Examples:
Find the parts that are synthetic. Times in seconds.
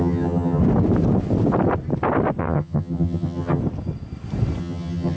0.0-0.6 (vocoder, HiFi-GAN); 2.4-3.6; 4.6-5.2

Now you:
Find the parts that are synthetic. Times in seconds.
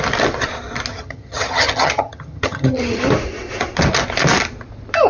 0.9-3.0 (vocoder, HiFi-GAN)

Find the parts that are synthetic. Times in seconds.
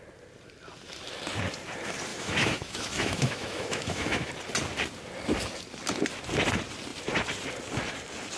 2.1-4.3 (autoencoder, DAC-VAE)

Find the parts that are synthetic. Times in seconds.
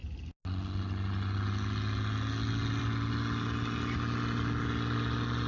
none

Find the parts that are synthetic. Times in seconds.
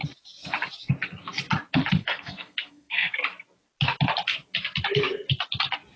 2.0-3.1 (codec, SNAC)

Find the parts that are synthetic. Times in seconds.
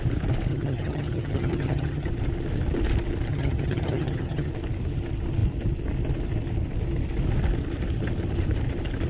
0.5-2.1 (vocoder, HiFi-GAN); 3.3-4.5